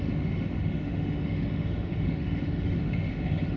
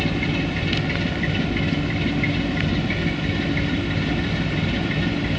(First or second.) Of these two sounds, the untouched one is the second